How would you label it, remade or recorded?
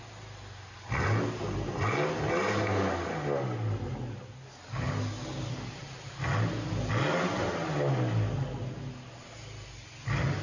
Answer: recorded